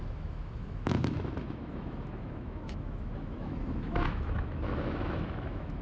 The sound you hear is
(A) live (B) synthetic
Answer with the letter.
B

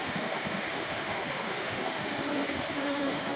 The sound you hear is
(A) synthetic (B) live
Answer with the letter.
A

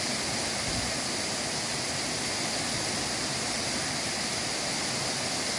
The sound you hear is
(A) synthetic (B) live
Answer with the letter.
B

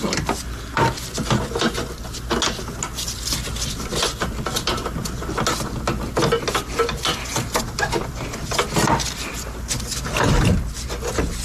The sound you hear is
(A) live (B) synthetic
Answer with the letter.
A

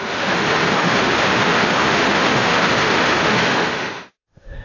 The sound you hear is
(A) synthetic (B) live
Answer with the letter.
A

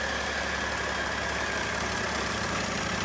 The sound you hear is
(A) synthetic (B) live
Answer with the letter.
B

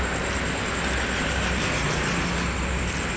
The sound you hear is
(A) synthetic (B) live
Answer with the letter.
B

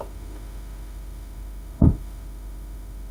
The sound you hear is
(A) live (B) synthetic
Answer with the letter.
B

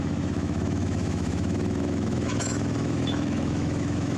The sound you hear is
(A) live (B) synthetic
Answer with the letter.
B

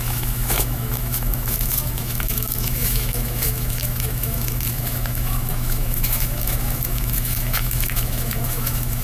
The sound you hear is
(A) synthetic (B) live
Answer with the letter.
A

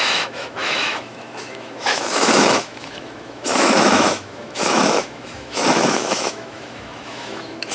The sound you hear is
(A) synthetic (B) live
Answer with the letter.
A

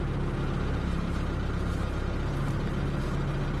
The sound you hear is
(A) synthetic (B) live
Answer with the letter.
B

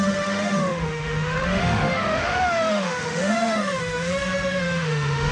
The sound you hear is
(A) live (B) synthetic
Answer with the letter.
B